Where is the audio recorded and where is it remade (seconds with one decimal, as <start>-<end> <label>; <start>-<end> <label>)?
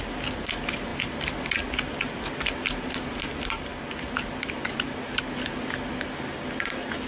0.0-7.1 recorded